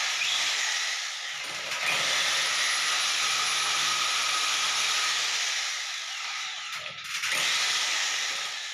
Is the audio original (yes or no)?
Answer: yes